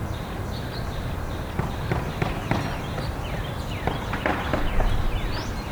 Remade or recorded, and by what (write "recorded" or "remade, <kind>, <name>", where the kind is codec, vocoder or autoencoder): recorded